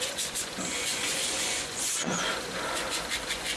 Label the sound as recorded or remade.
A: remade